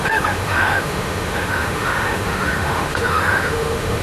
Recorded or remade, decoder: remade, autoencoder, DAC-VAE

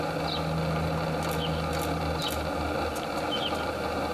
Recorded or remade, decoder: recorded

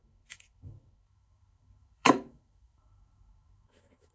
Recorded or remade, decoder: remade, autoencoder, DAC-VAE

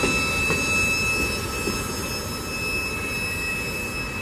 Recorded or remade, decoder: recorded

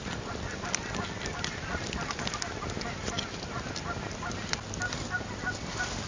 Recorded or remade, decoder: recorded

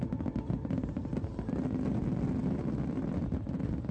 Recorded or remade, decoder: recorded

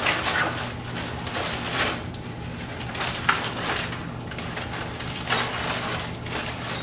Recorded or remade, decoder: recorded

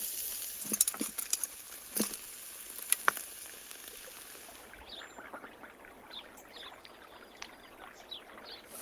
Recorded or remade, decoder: recorded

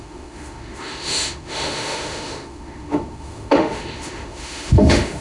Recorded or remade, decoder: remade, autoencoder, DAC-VAE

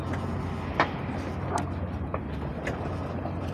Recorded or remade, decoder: recorded